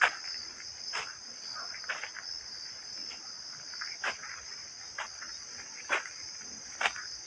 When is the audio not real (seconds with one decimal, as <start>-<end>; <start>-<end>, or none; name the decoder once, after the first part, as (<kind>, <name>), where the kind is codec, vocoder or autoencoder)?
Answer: none